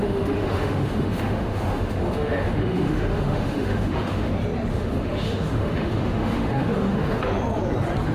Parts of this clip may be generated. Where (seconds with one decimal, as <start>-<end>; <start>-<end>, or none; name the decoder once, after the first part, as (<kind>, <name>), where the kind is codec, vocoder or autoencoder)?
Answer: 0.0-4.3 (autoencoder, DAC-VAE); 4.7-7.2